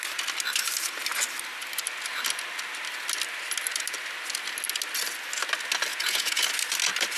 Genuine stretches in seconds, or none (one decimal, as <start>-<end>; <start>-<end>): 0.0-5.9; 6.4-7.2